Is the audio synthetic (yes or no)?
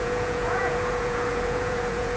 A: yes